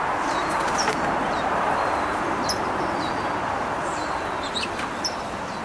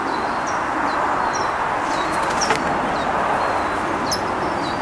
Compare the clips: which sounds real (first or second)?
second